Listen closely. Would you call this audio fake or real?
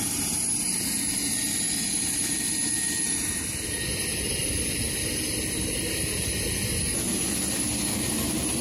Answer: real